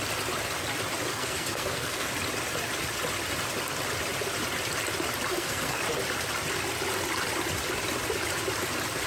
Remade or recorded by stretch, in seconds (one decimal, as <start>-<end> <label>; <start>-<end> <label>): 0.0-1.1 recorded; 1.1-2.1 remade; 2.1-5.3 recorded; 5.3-5.8 remade; 5.8-9.1 recorded

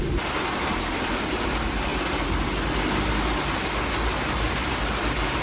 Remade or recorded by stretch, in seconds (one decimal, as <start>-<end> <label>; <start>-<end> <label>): 0.0-5.4 recorded